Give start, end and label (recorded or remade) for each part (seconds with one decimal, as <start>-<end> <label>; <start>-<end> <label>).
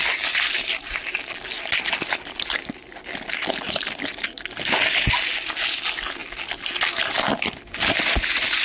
0.0-8.6 recorded